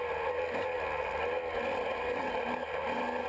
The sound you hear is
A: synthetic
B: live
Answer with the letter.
B